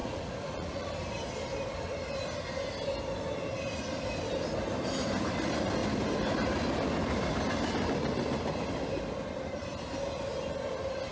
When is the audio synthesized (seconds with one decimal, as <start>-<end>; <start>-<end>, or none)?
0.0-0.9